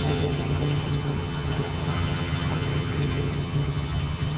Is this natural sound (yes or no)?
no